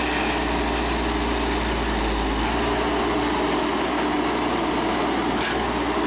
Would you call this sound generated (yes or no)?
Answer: no